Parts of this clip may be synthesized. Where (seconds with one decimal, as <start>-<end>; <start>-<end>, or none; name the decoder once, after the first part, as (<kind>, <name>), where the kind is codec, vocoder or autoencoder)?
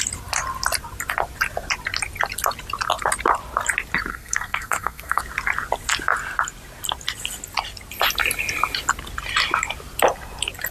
4.1-5.2 (codec, SNAC)